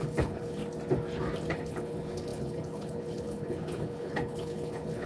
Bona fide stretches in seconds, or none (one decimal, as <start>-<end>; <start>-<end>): 0.6-1.5